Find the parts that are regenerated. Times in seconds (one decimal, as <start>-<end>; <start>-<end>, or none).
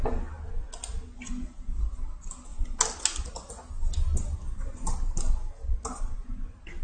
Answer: none